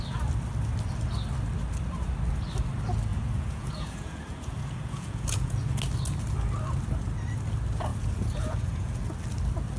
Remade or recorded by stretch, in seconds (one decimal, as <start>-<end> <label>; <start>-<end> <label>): 0.0-3.1 recorded; 3.1-5.8 remade; 5.8-7.9 recorded; 7.9-9.0 remade; 9.0-9.8 recorded